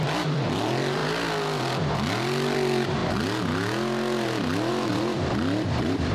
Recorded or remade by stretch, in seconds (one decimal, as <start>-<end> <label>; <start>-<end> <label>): 0.0-1.0 remade; 1.0-1.6 recorded; 1.6-3.0 remade; 3.0-4.7 recorded; 4.7-6.1 remade